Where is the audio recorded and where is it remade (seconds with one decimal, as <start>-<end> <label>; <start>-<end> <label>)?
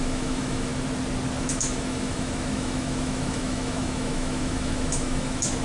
0.0-0.7 remade; 0.7-1.4 recorded; 1.4-5.6 remade